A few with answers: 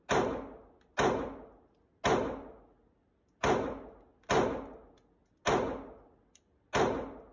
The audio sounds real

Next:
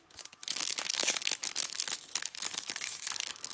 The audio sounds fake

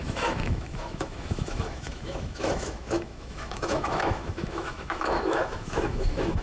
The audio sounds fake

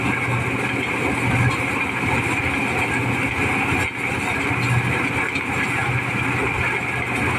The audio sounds real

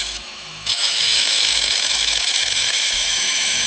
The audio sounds fake